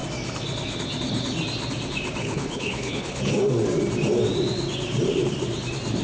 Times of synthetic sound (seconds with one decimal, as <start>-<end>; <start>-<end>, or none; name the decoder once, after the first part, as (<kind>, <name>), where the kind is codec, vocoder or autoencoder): 2.2-3.3 (codec, HILCodec)